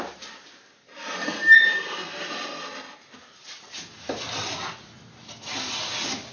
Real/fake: real